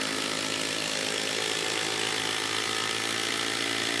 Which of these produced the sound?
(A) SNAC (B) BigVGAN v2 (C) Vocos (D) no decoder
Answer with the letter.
D